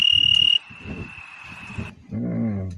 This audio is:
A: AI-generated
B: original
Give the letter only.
B